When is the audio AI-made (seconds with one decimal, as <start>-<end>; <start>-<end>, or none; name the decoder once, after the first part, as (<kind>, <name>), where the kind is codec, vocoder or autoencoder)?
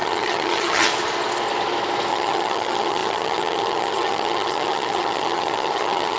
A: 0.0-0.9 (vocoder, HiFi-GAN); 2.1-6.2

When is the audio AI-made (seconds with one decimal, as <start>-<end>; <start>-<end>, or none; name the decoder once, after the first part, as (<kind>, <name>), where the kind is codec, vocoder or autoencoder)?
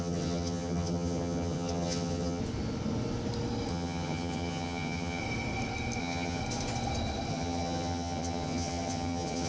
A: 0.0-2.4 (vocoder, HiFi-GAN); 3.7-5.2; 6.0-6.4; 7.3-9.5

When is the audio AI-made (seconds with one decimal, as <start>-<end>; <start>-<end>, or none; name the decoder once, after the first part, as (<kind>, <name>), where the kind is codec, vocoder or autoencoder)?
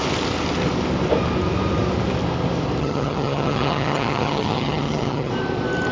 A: 2.8-5.3 (vocoder, HiFi-GAN)